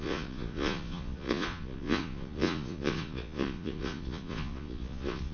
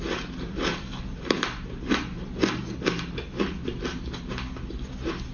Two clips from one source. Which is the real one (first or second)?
second